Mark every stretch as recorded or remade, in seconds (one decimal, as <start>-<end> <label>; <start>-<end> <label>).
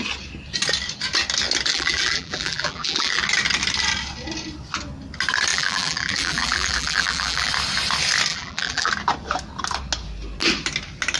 0.0-1.7 recorded; 1.7-3.2 remade; 3.2-5.5 recorded; 5.5-7.5 remade; 7.5-8.3 recorded; 8.3-8.9 remade; 8.9-11.2 recorded